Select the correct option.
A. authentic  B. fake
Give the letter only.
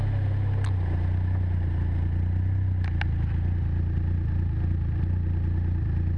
A